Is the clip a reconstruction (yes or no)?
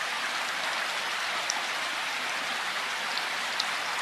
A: no